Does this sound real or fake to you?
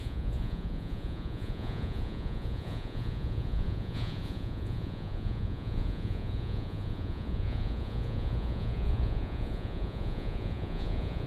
fake